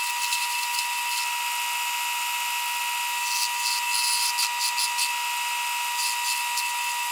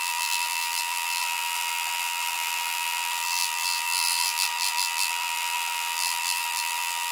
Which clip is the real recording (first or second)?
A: first